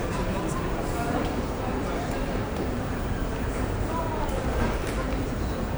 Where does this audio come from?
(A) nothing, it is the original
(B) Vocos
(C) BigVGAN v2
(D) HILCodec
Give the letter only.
C